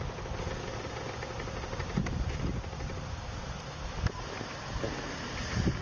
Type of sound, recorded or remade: recorded